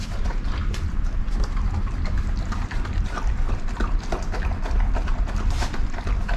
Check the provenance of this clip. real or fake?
fake